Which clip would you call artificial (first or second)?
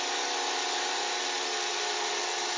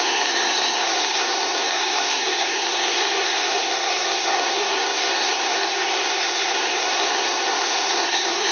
second